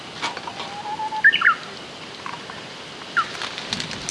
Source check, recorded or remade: recorded